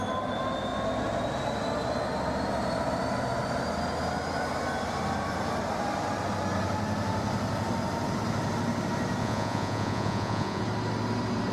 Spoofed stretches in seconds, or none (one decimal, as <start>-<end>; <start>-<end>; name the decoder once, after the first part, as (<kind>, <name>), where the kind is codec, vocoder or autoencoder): 9.2-10.6 (vocoder, Vocos)